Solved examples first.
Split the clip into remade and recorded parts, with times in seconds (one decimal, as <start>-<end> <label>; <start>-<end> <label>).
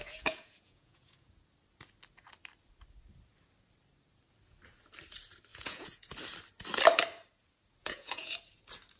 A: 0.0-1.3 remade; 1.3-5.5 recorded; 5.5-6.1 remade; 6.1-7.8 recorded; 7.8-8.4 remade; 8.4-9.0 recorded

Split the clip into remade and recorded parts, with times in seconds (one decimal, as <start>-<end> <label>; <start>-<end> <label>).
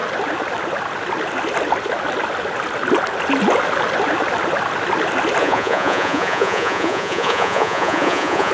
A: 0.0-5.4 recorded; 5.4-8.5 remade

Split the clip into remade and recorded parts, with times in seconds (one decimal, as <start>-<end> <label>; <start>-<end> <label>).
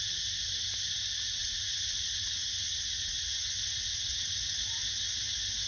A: 0.0-1.4 recorded; 1.4-4.6 remade; 4.6-5.7 recorded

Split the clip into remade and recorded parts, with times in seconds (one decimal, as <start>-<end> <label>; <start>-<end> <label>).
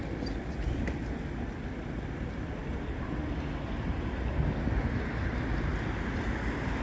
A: 0.0-6.8 recorded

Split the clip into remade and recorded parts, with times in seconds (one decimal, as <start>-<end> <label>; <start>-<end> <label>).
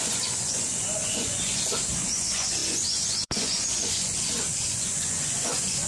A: 0.0-5.9 remade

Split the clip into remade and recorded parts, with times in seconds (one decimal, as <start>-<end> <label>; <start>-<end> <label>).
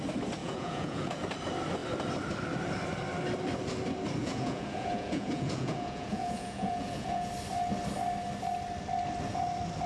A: 0.0-0.4 recorded; 0.4-1.2 remade; 1.2-4.2 recorded; 4.2-7.3 remade; 7.3-9.9 recorded